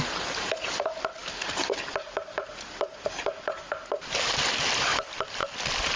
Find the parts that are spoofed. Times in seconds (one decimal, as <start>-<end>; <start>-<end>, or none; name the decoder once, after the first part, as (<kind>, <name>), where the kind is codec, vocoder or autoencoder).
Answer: none